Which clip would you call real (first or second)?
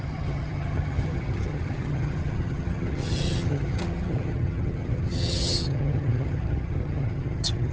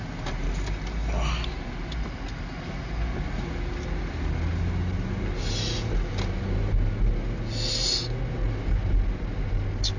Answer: second